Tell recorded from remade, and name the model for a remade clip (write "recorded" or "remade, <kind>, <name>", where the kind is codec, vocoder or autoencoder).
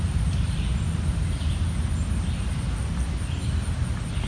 recorded